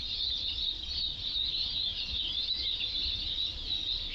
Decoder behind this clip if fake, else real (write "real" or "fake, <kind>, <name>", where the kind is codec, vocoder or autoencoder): real